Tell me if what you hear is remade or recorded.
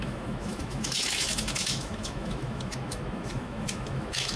remade